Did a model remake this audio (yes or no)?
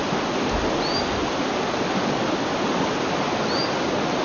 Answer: no